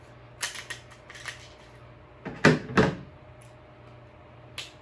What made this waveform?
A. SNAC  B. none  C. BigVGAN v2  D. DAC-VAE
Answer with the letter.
B